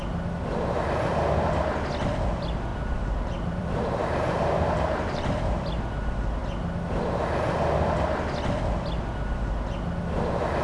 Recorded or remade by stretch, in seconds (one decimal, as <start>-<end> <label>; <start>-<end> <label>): 0.0-2.7 recorded; 2.7-5.8 remade; 5.8-10.6 recorded